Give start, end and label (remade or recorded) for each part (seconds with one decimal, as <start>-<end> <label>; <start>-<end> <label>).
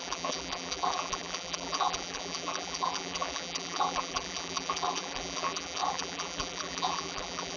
0.0-7.6 remade